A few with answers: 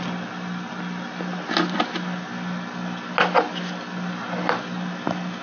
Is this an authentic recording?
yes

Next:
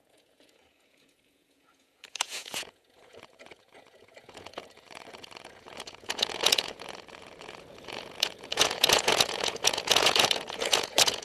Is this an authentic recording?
no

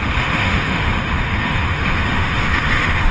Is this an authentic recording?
no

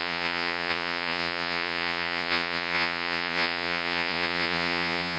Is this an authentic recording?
no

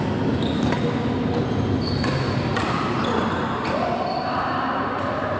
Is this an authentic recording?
yes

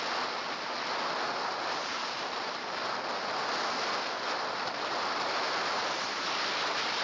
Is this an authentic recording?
yes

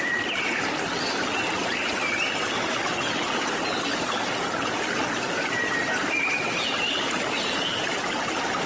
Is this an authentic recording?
yes